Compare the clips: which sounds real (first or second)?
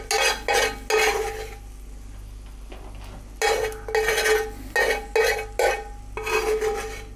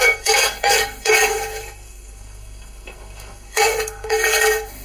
first